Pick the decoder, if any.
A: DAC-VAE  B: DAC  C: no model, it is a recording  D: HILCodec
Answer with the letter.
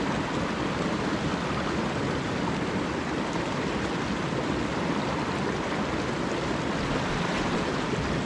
C